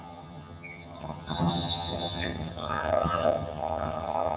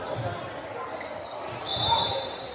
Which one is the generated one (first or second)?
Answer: first